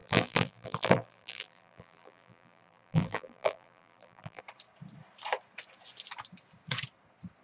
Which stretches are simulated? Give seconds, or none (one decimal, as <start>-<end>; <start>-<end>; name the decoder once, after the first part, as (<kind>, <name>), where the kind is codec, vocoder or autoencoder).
0.0-4.4 (vocoder, BigVGAN v2)